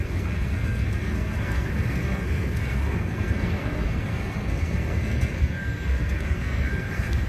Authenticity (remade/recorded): remade